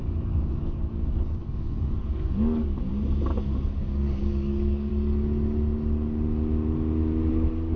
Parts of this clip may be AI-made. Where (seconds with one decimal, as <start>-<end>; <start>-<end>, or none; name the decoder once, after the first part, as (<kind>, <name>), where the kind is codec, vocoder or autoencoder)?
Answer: 0.0-2.9 (codec, DAC); 3.8-4.9; 7.3-7.8